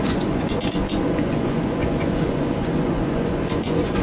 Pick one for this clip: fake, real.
fake